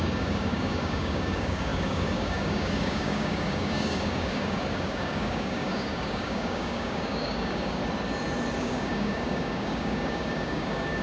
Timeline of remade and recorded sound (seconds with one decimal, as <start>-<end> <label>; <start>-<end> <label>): 0.0-7.8 remade; 7.8-8.6 recorded; 8.6-11.0 remade